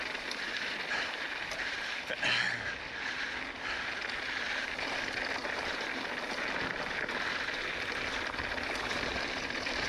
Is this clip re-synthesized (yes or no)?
no